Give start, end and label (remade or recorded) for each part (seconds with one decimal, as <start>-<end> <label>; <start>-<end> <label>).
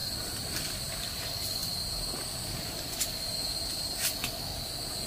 0.0-1.2 remade; 1.2-5.1 recorded